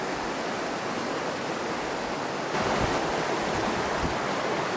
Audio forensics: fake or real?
real